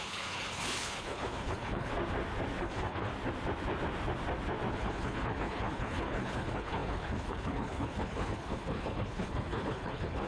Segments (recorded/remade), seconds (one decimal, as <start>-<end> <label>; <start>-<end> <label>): 0.0-1.9 remade; 1.9-2.6 recorded; 2.6-3.1 remade; 3.1-4.7 recorded; 4.7-10.3 remade